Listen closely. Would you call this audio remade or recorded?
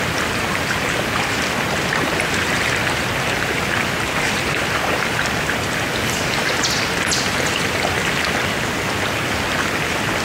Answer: recorded